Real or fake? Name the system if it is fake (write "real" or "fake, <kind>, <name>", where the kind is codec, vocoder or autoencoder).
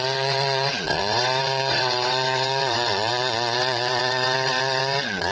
fake, vocoder, WaveNeXt